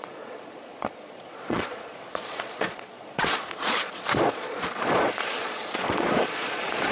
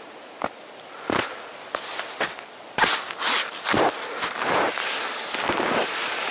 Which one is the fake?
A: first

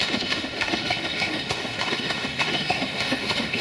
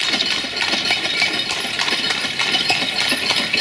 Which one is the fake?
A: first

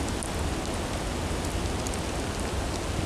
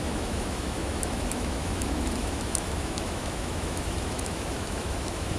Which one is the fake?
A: second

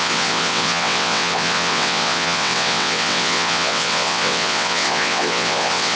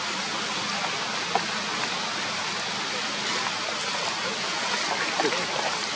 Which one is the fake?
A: first